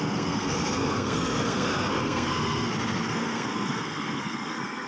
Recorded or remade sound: remade